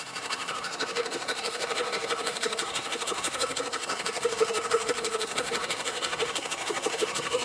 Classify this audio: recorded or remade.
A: remade